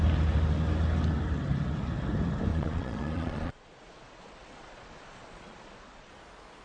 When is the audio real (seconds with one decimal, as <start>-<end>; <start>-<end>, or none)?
0.0-2.5; 6.1-6.6